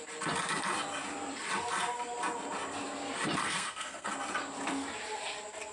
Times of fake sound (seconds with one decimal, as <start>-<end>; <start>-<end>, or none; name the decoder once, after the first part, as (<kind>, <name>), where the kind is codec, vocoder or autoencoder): 3.4-4.1 (codec, SNAC)